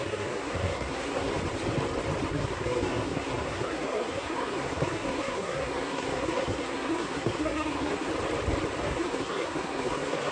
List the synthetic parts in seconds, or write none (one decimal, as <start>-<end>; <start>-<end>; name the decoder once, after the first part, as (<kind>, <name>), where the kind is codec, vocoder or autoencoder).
0.0-1.3 (codec, SNAC); 2.3-8.1; 8.8-10.3